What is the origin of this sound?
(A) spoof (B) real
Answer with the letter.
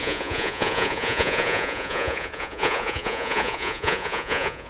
A